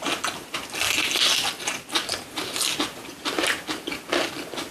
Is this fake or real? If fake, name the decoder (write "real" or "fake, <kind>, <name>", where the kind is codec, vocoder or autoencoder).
real